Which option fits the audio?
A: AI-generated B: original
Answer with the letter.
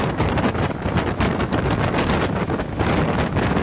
B